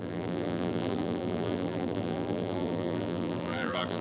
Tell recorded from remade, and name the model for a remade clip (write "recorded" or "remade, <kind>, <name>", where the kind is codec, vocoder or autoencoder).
remade, vocoder, BigVGAN v2